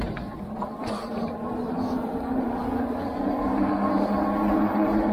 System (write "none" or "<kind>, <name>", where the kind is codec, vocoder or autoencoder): none